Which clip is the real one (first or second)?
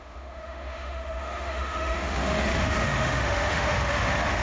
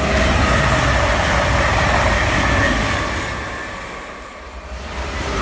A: second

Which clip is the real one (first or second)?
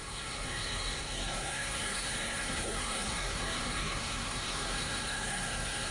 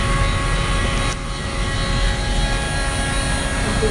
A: second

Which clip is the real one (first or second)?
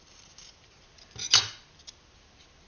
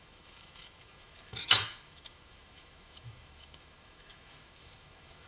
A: first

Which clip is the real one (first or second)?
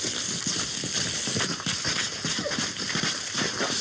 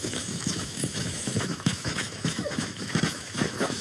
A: first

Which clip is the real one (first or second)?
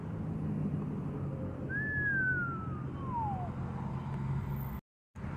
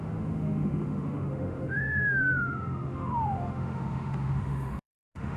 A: first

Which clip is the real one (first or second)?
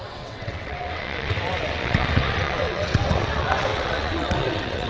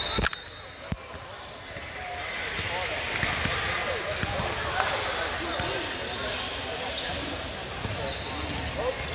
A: second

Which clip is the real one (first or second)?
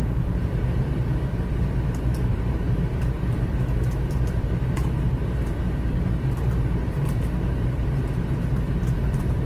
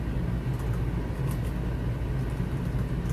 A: second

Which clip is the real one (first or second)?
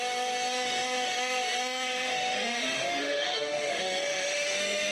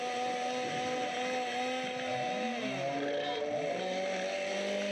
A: second